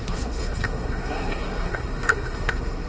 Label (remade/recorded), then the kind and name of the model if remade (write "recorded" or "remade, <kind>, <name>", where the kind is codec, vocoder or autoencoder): remade, codec, SNAC